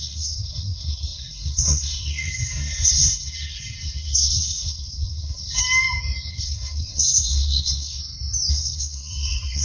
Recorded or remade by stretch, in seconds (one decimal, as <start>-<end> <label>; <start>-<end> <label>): 0.0-5.6 remade; 5.6-6.3 recorded; 6.3-8.0 remade; 8.0-8.5 recorded; 8.5-9.6 remade